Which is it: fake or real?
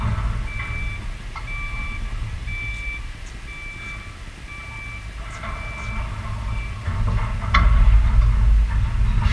real